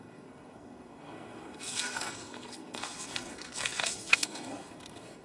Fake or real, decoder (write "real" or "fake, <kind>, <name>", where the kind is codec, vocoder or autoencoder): fake, codec, SNAC